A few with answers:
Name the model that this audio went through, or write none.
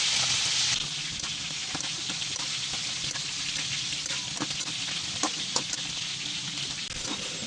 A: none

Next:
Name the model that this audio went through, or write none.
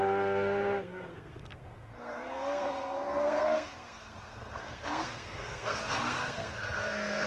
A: codec, SNAC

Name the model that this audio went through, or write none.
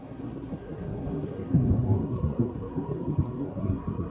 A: codec, SNAC